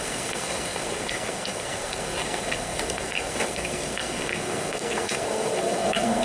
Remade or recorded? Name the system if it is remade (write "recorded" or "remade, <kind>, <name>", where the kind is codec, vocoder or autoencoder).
remade, codec, SNAC